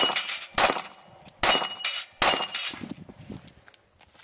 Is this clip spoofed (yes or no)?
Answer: no